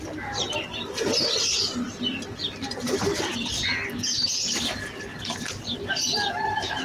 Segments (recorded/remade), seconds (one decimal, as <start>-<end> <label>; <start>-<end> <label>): 0.0-6.8 recorded